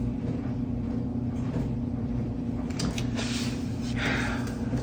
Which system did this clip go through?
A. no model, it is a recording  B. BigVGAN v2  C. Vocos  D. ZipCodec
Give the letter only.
B